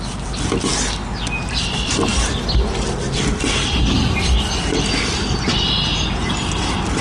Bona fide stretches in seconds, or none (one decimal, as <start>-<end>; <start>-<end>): 0.0-7.0